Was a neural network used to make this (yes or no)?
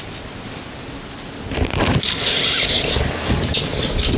no